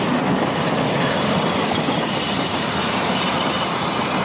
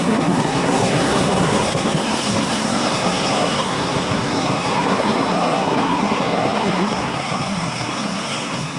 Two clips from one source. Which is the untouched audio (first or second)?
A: first